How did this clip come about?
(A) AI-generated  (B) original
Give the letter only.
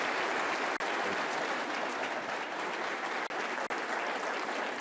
B